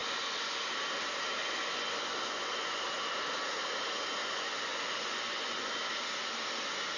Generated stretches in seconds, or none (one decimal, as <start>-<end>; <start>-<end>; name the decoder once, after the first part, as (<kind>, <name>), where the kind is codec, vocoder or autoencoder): 0.0-0.6 (vocoder, Vocos); 1.4-2.8; 4.2-5.7